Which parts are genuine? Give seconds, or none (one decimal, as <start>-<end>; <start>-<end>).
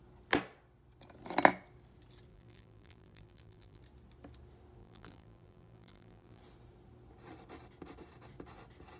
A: 0.0-2.3; 3.8-4.8; 6.4-9.0